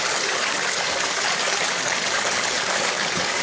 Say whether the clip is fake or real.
fake